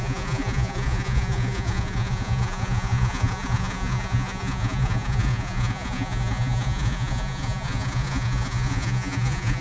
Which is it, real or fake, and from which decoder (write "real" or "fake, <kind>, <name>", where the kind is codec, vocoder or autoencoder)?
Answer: fake, vocoder, Vocos